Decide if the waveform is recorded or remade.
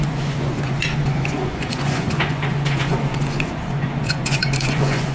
remade